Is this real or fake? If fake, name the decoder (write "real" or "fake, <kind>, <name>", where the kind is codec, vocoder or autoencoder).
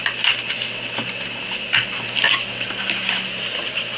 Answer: real